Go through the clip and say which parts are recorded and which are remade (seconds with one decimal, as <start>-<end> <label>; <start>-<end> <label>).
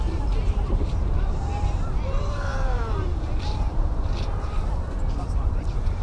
0.0-6.0 remade